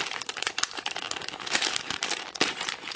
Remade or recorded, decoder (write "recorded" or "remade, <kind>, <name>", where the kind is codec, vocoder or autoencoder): remade, vocoder, BigVGAN v2